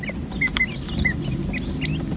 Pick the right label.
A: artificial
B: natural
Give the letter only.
B